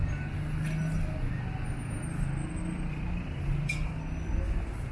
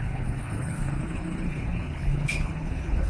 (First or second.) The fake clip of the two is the second